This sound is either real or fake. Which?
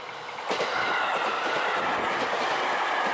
real